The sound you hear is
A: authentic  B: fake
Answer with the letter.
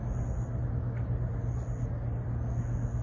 A